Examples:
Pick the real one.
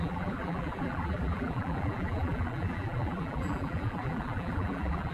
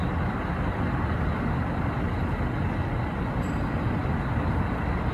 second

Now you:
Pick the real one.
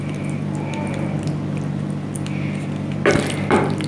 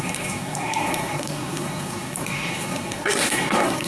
first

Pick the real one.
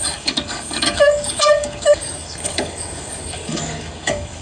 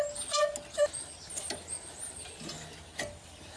second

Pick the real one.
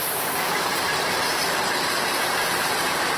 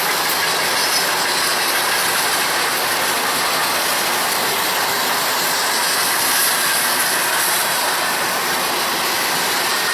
second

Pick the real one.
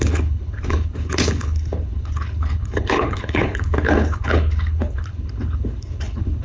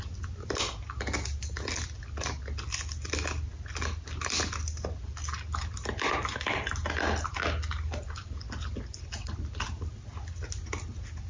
second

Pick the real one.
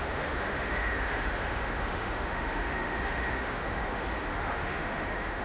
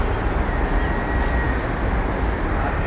second